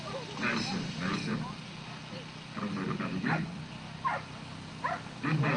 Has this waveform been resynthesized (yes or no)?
no